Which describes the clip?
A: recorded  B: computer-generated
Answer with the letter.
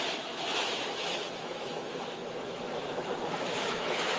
B